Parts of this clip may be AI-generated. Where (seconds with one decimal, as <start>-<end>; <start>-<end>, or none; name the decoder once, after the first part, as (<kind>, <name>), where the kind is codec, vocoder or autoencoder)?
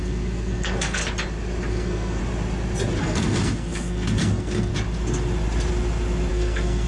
0.0-1.0 (codec, SNAC); 1.7-2.2; 3.0-4.7; 6.3-6.9